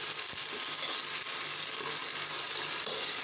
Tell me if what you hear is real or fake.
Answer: real